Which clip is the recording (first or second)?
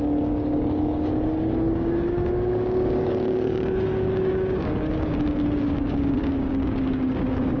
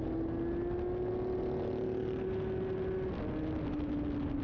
second